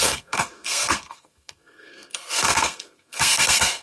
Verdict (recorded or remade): remade